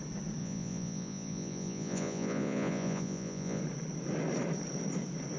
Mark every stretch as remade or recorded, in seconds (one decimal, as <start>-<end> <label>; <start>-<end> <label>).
0.0-0.4 recorded; 0.4-3.6 remade; 3.6-5.4 recorded